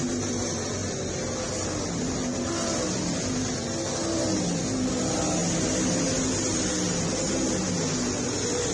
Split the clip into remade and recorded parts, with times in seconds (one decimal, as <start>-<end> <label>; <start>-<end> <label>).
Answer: 0.0-8.7 recorded

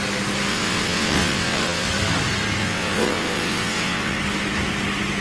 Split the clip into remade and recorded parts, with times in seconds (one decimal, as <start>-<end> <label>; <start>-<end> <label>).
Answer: 0.0-0.5 recorded; 0.5-1.9 remade; 1.9-2.6 recorded; 2.6-4.2 remade; 4.2-5.2 recorded

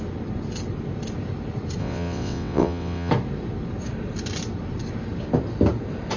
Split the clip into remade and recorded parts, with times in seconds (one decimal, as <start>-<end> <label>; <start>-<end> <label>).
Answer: 0.0-1.8 recorded; 1.8-3.1 remade; 3.1-6.2 recorded

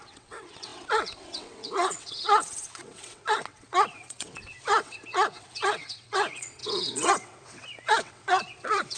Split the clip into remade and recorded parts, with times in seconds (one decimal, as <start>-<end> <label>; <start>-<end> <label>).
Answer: 0.0-9.0 remade

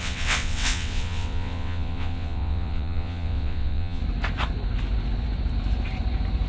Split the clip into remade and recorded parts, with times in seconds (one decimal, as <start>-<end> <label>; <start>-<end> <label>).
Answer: 0.0-4.0 remade; 4.0-6.5 recorded

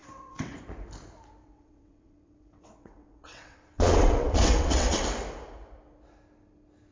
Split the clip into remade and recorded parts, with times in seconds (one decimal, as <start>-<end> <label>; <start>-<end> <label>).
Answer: 0.0-0.6 remade; 0.6-1.4 recorded; 1.4-5.0 remade; 5.0-6.9 recorded

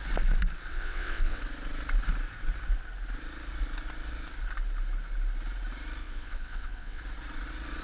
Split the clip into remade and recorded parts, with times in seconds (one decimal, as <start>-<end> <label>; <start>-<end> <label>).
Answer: 0.0-0.7 recorded; 0.7-1.4 remade; 1.4-6.0 recorded; 6.0-7.0 remade; 7.0-7.8 recorded